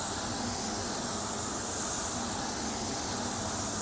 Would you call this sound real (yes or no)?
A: yes